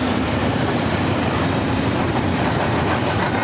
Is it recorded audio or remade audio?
remade